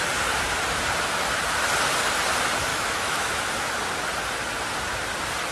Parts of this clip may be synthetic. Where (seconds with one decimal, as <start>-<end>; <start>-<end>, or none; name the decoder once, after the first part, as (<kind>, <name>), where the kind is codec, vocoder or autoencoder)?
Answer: 2.7-3.3 (autoencoder, DAC-VAE)